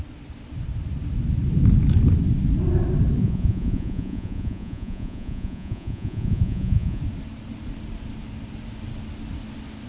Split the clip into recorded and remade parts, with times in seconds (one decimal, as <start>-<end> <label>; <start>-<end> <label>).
0.0-3.2 recorded; 3.2-7.0 remade; 7.0-9.9 recorded